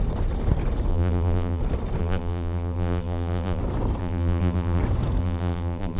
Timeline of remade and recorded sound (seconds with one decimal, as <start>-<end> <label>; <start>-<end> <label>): 0.0-0.9 recorded; 0.9-1.6 remade; 1.6-2.0 recorded; 2.0-3.6 remade; 3.6-4.0 recorded; 4.0-4.8 remade; 4.8-5.2 recorded; 5.2-6.0 remade